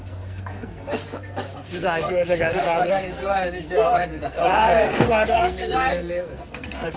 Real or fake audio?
fake